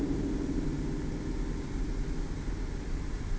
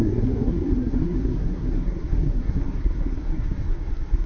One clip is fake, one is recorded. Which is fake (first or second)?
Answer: second